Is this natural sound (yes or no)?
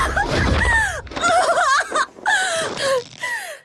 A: yes